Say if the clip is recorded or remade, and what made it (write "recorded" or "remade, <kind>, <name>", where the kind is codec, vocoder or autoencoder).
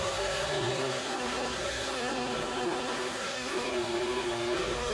remade, codec, SNAC